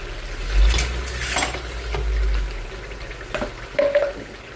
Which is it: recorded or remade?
recorded